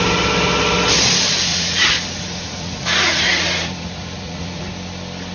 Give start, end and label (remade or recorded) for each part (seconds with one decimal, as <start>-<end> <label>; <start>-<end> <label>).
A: 0.0-1.5 recorded; 1.5-4.7 remade; 4.7-5.3 recorded